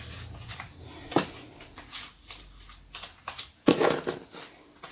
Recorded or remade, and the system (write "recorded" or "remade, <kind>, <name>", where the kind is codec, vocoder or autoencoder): recorded